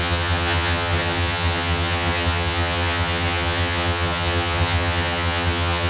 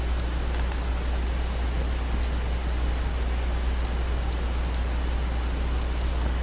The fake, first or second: first